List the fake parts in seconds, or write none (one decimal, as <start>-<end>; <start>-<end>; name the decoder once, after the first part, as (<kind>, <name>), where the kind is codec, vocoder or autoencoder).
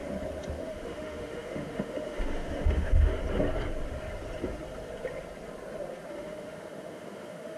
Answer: 0.6-3.1 (autoencoder, DAC-VAE); 6.1-7.6